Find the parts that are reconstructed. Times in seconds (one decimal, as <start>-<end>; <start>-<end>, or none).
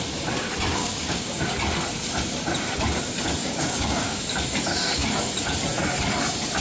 0.8-1.4; 3.4-4.2